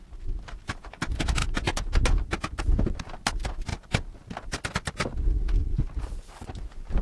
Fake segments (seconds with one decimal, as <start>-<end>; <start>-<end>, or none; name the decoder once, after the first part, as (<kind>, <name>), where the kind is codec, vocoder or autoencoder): none